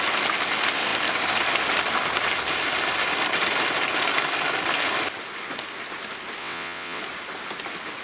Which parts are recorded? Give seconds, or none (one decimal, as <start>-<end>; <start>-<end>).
0.0-6.4; 7.0-8.0